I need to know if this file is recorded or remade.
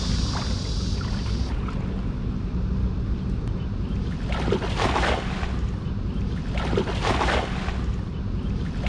recorded